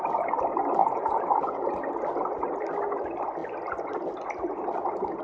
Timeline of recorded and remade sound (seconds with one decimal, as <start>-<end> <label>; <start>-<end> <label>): 0.0-0.8 recorded; 0.8-1.9 remade; 1.9-5.2 recorded